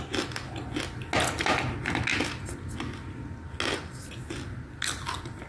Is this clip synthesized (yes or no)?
no